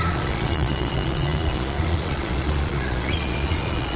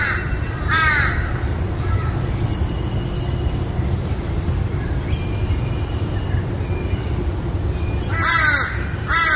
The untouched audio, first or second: second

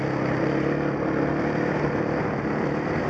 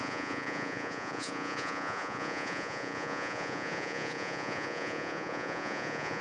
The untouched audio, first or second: first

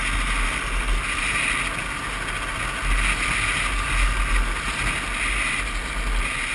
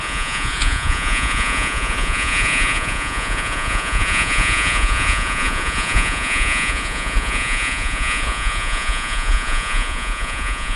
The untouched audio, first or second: first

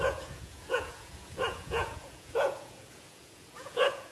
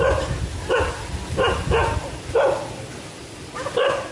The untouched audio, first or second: second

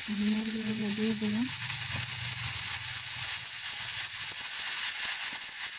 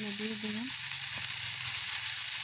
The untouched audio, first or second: second